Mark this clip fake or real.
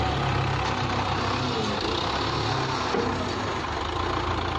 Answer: real